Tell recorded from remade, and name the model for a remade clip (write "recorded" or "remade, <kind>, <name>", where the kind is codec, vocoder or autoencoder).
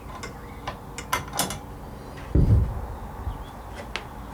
recorded